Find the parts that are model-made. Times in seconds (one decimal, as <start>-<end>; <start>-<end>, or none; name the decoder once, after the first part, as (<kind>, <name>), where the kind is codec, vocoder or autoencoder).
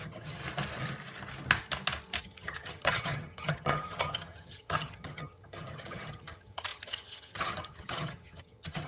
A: 0.0-0.4 (vocoder, HiFi-GAN); 2.2-8.9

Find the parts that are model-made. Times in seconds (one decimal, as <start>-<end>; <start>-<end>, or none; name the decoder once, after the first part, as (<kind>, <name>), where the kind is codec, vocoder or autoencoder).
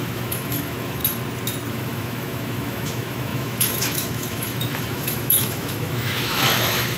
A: 0.0-1.0 (autoencoder, DAC-VAE); 1.7-7.0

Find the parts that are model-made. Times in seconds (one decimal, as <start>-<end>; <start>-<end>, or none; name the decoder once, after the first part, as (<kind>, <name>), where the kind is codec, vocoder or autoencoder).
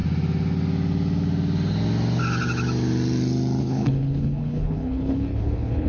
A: 3.6-5.9 (codec, HILCodec)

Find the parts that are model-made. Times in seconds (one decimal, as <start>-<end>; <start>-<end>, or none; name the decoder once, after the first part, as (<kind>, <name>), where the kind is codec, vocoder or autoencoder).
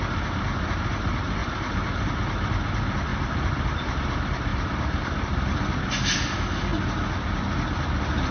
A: 1.4-2.1 (vocoder, BigVGAN v2); 4.5-5.2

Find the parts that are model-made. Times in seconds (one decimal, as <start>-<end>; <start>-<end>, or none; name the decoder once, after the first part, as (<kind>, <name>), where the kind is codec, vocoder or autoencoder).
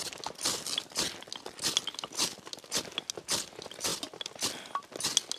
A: 3.9-4.5 (vocoder, BigVGAN v2)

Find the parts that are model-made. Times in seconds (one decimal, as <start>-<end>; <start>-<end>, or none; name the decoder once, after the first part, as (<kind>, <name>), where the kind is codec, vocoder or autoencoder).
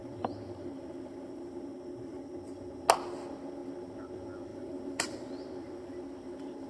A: 0.0-2.2 (vocoder, BigVGAN v2); 4.5-5.9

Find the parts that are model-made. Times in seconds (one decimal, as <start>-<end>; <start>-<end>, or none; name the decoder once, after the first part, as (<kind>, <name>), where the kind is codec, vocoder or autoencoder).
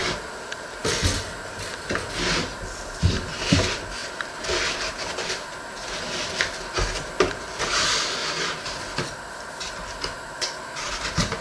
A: 0.0-0.8 (vocoder, BigVGAN v2); 1.7-11.4